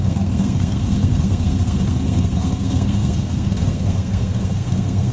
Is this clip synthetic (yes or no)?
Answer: yes